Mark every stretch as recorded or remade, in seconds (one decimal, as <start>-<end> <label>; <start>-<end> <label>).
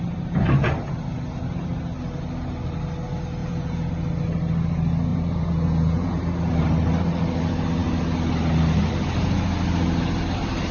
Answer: 0.0-3.4 recorded; 3.4-3.9 remade; 3.9-5.1 recorded; 5.1-6.2 remade; 6.2-10.7 recorded